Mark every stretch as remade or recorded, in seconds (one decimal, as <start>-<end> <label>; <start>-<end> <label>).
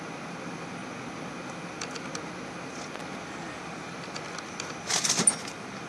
0.0-5.9 recorded